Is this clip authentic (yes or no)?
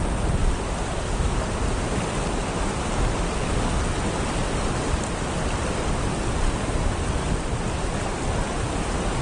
yes